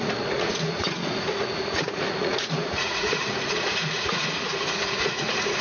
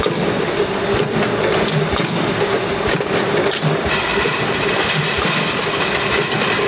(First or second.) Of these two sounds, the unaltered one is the second